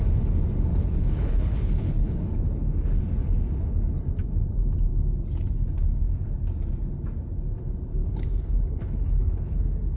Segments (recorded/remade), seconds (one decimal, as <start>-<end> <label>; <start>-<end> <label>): 0.0-0.7 recorded; 0.7-3.0 remade; 3.0-8.0 recorded; 8.0-9.6 remade; 9.6-10.0 recorded